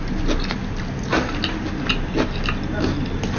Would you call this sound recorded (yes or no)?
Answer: yes